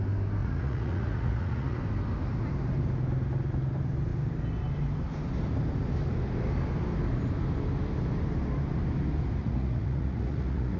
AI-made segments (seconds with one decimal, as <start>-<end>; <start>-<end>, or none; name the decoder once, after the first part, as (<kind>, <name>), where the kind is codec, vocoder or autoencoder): 0.4-1.8 (vocoder, Vocos); 9.4-10.8